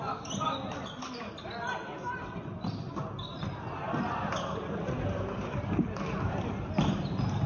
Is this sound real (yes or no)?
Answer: yes